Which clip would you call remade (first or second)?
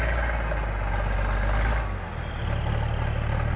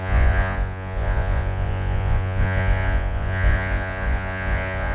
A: second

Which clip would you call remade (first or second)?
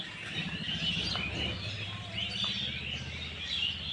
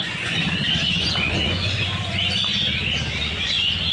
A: second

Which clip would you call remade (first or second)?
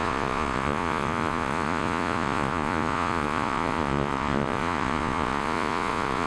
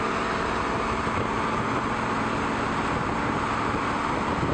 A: first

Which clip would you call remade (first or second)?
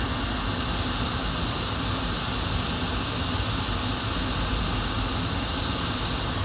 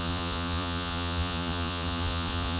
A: second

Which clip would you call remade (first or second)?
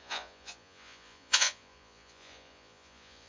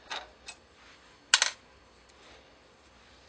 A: first